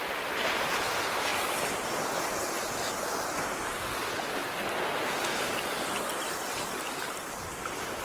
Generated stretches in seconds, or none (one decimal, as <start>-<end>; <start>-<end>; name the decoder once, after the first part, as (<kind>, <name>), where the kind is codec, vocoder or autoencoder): none